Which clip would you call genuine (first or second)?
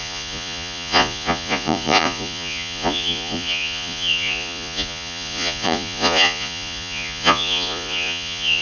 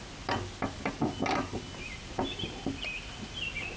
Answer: second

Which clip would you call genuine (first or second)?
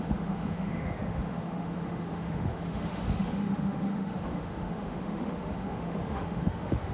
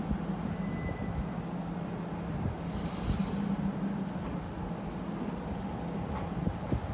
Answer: second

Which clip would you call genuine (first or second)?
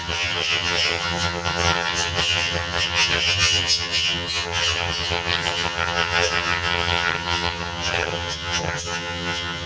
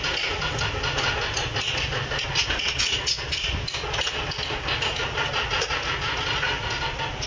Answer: second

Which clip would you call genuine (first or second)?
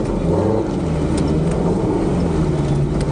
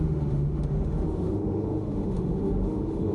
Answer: first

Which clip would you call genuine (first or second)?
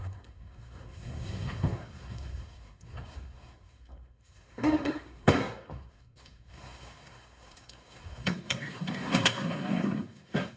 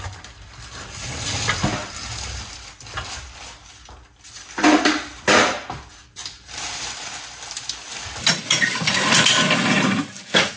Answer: second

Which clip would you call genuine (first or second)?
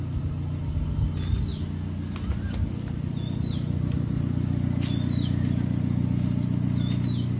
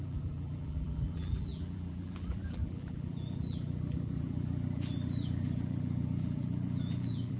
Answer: first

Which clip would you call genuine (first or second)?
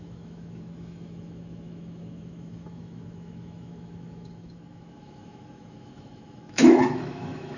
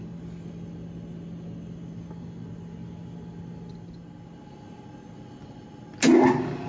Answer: second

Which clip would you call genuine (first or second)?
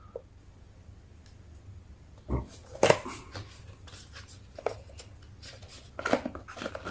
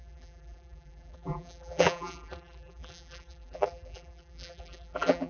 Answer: first